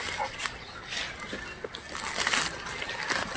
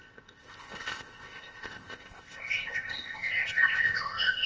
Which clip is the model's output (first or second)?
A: second